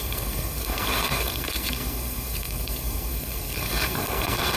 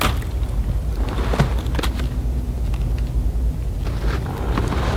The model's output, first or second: first